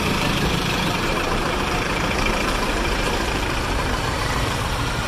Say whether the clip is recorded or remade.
remade